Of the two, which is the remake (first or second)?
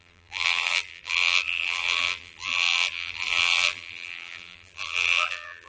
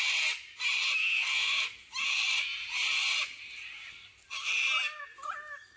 first